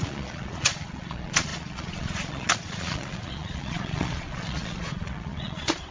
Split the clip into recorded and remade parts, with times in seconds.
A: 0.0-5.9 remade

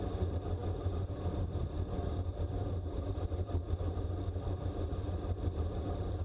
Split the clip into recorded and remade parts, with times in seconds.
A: 0.0-6.2 recorded